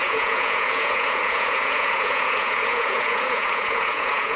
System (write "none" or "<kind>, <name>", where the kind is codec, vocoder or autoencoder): vocoder, Vocos